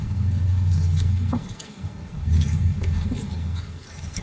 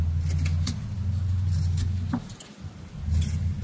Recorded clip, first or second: second